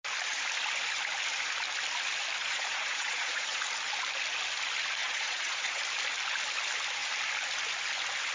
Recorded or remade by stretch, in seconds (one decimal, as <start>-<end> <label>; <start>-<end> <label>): 0.0-2.4 recorded; 2.4-3.6 remade; 3.6-5.0 recorded; 5.0-5.8 remade; 5.8-8.3 recorded